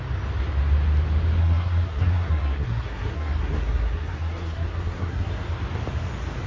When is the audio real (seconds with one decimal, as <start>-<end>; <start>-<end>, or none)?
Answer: 0.0-1.4; 5.3-6.5